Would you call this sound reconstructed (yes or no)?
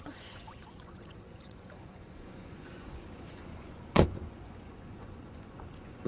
yes